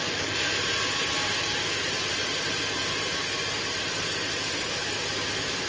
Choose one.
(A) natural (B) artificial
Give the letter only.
A